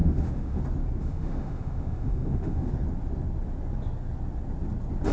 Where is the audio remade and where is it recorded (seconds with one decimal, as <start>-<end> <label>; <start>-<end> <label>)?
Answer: 0.0-0.6 remade; 0.6-1.0 recorded; 1.0-2.7 remade; 2.7-5.1 recorded